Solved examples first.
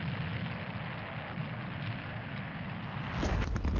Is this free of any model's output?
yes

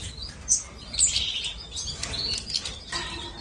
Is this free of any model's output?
yes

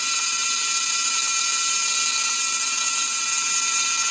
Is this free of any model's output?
no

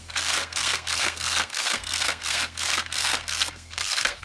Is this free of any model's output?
no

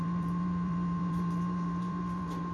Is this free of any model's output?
no